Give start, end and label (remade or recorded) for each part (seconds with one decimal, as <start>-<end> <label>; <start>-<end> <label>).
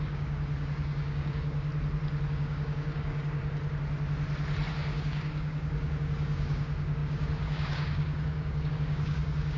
0.0-1.7 remade; 1.7-2.3 recorded; 2.3-3.4 remade; 3.4-4.7 recorded; 4.7-9.6 remade